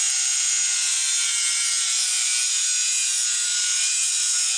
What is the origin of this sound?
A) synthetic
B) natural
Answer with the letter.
B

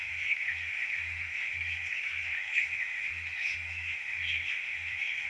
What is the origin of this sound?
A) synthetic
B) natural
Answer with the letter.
A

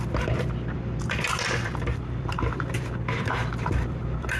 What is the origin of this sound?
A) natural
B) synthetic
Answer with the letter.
B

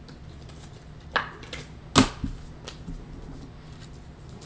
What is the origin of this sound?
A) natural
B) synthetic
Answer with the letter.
A